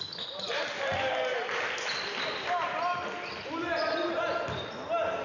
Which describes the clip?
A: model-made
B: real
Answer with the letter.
B